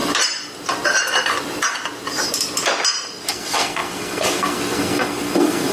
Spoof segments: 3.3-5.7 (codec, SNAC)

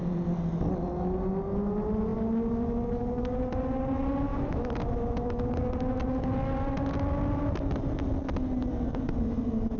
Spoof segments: 4.3-5.4 (autoencoder, DAC-VAE)

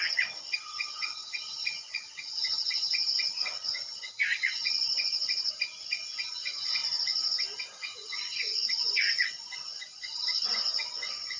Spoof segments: 0.0-6.8 (vocoder, Vocos); 7.6-11.4

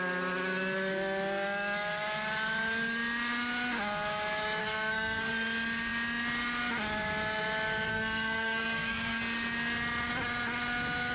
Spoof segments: 4.6-5.3 (codec, SNAC); 7.9-9.2